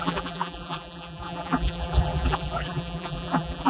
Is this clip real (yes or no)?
no